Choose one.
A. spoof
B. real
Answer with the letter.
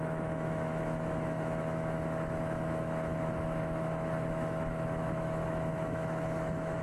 A